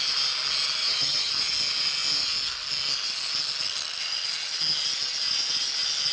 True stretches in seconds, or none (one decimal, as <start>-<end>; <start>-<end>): 0.0-0.8; 1.3-6.1